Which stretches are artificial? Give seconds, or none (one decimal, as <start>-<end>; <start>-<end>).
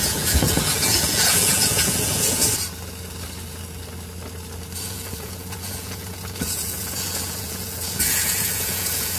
0.0-2.4; 4.8-9.2